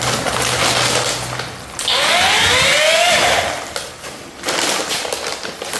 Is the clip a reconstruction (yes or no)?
no